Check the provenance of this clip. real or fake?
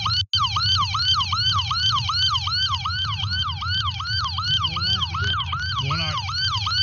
real